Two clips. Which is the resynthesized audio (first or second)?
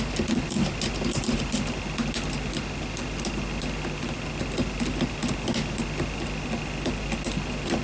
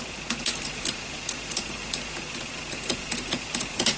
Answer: second